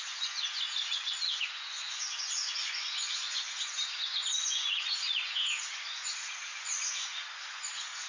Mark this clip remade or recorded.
remade